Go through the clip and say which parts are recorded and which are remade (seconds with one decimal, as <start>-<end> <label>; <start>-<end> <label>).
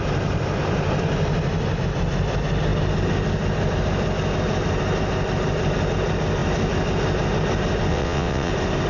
0.0-7.9 recorded; 7.9-8.5 remade; 8.5-8.9 recorded